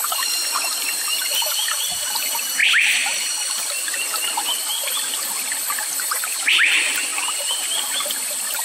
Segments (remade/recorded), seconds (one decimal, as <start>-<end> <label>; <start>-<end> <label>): 0.0-8.6 recorded